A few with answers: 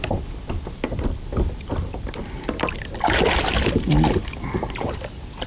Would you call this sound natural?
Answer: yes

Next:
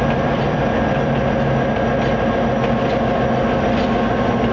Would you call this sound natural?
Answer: no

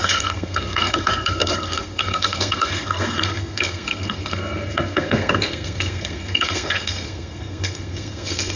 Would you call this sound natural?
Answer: no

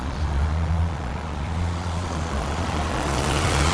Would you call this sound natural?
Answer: no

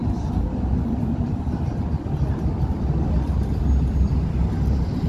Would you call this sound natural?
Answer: yes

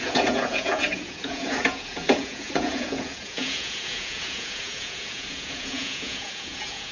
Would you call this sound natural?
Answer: no